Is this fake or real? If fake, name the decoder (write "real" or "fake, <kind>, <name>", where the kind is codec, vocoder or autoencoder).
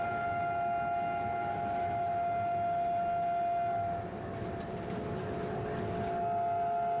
real